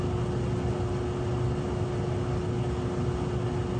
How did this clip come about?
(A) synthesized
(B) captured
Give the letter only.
B